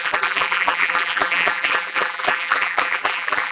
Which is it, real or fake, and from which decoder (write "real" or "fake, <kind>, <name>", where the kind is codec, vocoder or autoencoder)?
fake, vocoder, BigVGAN v2